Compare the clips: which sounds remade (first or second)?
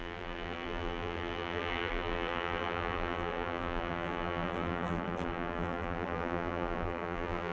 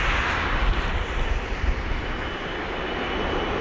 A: first